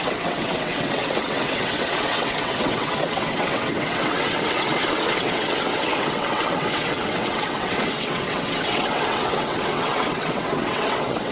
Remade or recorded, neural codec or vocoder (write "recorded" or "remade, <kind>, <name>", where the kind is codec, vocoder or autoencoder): remade, vocoder, WaveNeXt